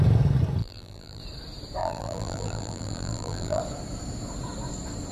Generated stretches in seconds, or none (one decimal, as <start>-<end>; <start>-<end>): 0.6-1.2; 1.8-3.6